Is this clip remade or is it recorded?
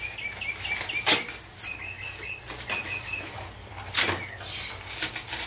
recorded